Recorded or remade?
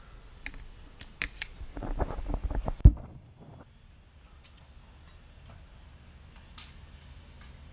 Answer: recorded